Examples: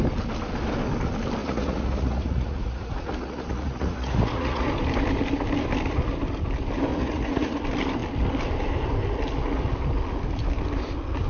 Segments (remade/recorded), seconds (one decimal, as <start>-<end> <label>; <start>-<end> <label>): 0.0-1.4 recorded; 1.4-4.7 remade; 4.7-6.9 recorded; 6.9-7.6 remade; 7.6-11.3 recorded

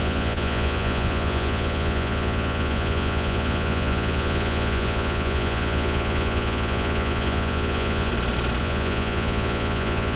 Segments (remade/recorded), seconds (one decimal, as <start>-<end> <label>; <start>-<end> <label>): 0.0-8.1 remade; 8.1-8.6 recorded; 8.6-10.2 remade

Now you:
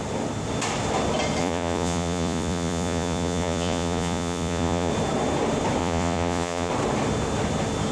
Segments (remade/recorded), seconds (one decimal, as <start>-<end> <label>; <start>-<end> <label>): 0.0-1.4 recorded; 1.4-4.9 remade; 4.9-5.8 recorded; 5.8-6.7 remade; 6.7-7.9 recorded

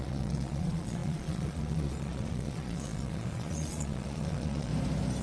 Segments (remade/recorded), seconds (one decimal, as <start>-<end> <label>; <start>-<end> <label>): 0.0-4.7 remade; 4.7-5.2 recorded

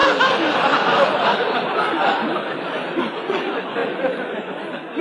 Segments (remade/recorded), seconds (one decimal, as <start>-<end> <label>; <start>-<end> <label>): 0.0-3.0 recorded; 3.0-5.0 remade

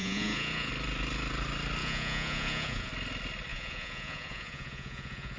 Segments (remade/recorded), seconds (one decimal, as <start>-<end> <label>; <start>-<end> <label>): 0.0-0.7 remade; 0.7-1.8 recorded; 1.8-2.9 remade; 2.9-3.5 recorded; 3.5-5.4 remade

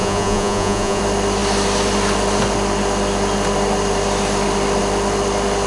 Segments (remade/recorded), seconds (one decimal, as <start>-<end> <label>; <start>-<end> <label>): 0.0-1.0 remade; 1.0-5.7 recorded

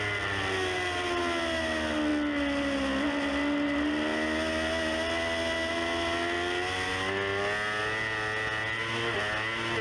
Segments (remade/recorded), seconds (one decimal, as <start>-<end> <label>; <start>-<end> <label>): 0.0-9.8 recorded